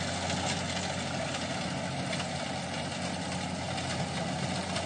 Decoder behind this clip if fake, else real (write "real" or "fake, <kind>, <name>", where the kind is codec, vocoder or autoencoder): real